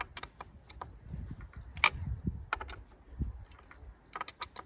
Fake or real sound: real